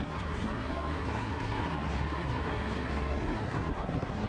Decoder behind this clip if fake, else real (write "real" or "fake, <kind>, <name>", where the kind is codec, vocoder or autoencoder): fake, codec, SNAC